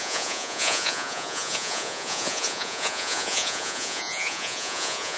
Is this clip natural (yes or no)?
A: no